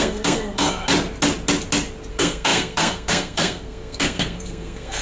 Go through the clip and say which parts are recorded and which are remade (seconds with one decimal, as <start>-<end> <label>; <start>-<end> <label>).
0.0-0.9 remade; 0.9-2.1 recorded; 2.1-5.0 remade